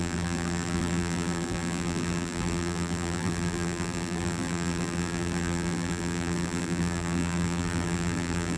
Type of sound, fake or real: fake